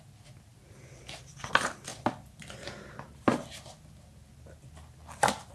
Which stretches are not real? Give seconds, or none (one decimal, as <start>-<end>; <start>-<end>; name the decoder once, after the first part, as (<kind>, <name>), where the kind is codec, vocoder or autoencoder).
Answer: none